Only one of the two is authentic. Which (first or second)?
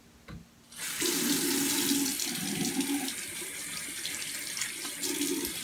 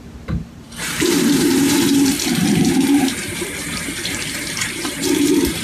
first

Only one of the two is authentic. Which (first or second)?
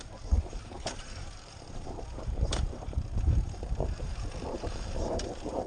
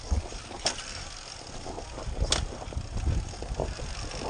second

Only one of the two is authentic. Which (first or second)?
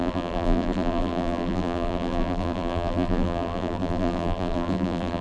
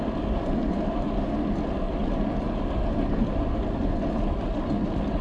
second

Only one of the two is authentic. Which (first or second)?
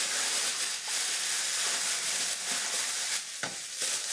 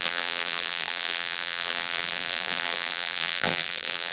first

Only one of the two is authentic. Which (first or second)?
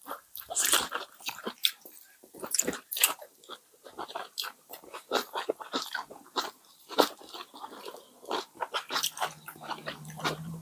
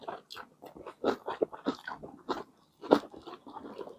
second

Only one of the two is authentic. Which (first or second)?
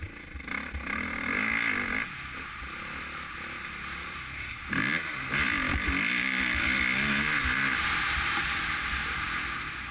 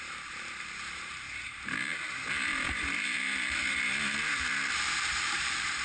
first